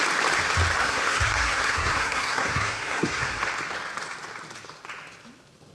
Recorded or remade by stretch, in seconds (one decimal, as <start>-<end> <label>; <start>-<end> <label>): 0.0-0.8 recorded; 0.8-3.4 remade; 3.4-5.7 recorded